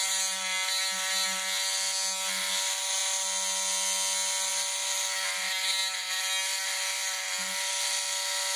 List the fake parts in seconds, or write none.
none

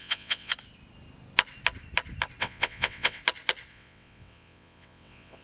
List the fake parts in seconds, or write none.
0.0-0.5; 2.4-3.2; 3.7-5.4